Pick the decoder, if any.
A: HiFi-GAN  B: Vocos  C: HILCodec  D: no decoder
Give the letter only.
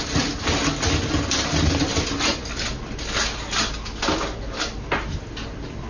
D